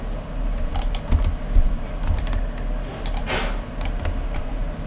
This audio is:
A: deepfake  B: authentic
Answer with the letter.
B